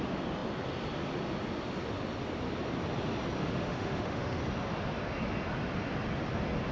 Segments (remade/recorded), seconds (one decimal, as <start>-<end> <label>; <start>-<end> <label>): 0.0-3.4 recorded; 3.4-4.4 remade; 4.4-6.7 recorded